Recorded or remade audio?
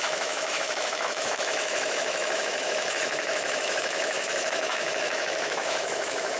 remade